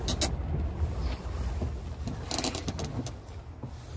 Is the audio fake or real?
real